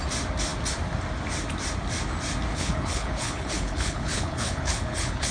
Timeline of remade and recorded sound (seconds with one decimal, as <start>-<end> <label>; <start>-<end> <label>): 0.0-2.5 recorded; 2.5-5.3 remade